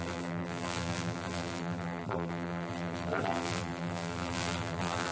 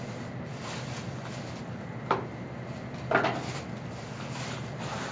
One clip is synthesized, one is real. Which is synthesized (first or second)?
first